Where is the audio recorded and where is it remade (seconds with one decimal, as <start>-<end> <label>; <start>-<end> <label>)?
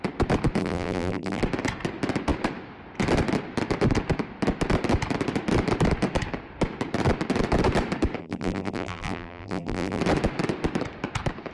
0.0-0.6 recorded; 0.6-1.4 remade; 1.4-8.2 recorded; 8.2-10.0 remade; 10.0-11.5 recorded